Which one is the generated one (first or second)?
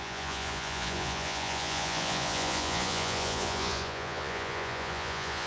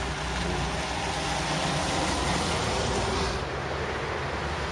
first